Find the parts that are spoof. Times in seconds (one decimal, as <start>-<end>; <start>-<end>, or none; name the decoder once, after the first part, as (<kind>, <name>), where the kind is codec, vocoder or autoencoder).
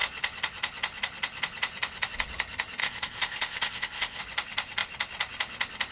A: 2.8-4.2 (codec, ZipCodec)